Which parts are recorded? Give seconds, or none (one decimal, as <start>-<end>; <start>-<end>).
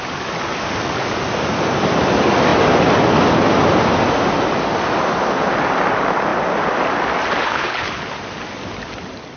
0.0-7.4; 8.1-9.4